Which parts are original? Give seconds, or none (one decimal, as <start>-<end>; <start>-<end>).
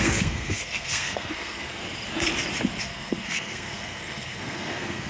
1.8-2.8